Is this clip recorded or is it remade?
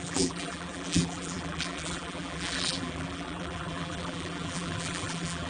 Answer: remade